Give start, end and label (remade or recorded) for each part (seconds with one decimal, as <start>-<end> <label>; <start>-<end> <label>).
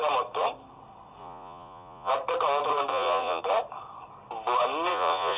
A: 0.0-1.2 recorded; 1.2-2.1 remade; 2.1-2.9 recorded; 2.9-3.4 remade; 3.4-4.9 recorded; 4.9-5.4 remade